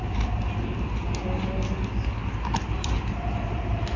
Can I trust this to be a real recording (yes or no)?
yes